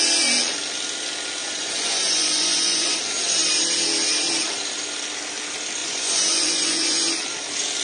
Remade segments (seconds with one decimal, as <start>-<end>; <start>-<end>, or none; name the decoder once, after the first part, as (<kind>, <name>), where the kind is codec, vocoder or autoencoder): 1.4-3.0 (vocoder, Vocos); 5.8-7.1